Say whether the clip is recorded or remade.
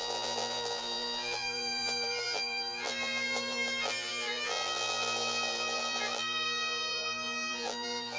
remade